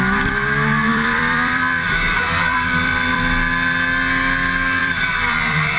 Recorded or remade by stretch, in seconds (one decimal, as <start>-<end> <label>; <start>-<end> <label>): 0.0-0.9 recorded; 0.9-3.2 remade; 3.2-4.8 recorded; 4.8-5.8 remade